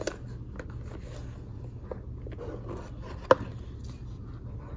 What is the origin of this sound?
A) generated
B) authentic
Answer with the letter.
B